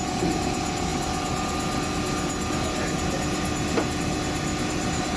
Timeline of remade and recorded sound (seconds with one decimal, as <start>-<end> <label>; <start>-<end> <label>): 0.0-5.2 recorded